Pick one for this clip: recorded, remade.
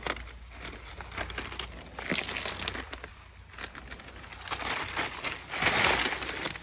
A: recorded